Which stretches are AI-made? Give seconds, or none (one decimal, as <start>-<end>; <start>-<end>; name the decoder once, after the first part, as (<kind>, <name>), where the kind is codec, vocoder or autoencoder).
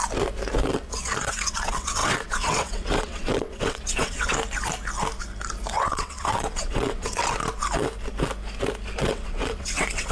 0.7-4.3 (vocoder, WaveNeXt); 5.7-7.2; 9.0-10.1